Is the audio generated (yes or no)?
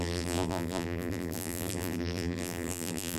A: yes